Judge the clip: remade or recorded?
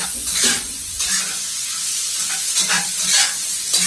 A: remade